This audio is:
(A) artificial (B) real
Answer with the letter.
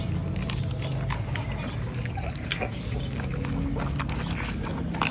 B